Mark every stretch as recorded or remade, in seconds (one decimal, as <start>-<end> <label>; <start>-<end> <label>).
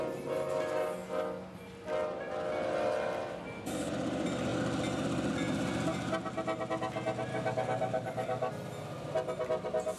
0.0-7.3 recorded; 7.3-8.5 remade; 8.5-10.0 recorded